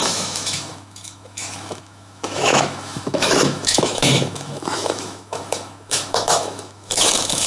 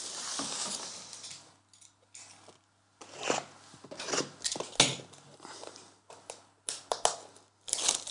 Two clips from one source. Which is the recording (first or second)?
second